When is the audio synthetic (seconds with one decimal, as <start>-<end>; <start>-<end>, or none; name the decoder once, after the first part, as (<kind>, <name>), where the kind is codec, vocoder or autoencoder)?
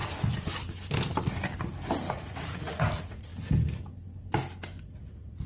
2.1-3.3 (vocoder, Vocos); 4.8-5.5